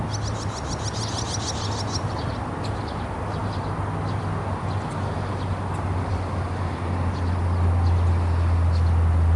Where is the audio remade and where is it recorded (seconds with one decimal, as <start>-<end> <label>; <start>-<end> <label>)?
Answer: 0.0-9.4 recorded